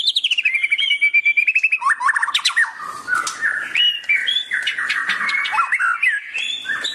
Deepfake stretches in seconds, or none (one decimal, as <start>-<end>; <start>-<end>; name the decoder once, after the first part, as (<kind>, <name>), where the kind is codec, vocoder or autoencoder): 2.2-3.0 (vocoder, BigVGAN v2); 4.2-5.3